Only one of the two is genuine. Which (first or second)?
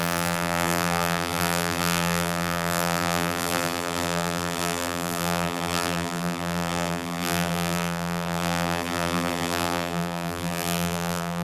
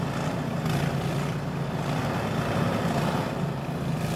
second